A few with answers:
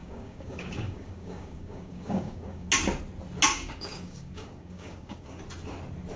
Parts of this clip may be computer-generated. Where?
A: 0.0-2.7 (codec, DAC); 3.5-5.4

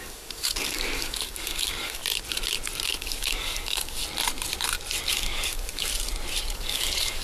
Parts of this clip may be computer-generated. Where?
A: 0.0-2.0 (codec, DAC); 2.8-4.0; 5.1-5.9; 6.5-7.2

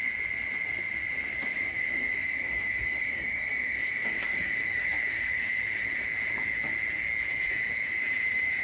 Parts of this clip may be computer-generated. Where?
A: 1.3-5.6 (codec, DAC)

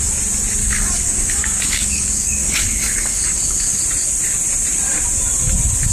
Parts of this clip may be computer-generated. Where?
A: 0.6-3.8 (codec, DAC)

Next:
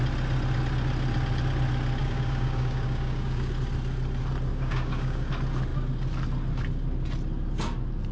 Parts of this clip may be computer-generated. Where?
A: 2.0-3.5 (codec, DAC); 4.5-5.3

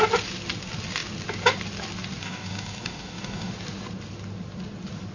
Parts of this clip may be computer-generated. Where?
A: 2.2-3.5 (codec, DAC)

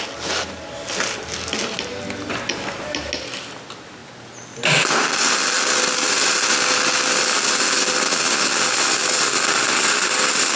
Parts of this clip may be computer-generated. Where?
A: none